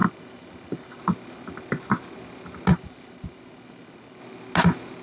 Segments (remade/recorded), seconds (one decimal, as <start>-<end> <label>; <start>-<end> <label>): 0.0-1.0 remade; 1.0-2.7 recorded; 2.7-4.2 remade; 4.2-5.0 recorded